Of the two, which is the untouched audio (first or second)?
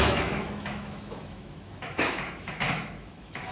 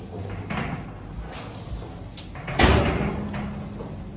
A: second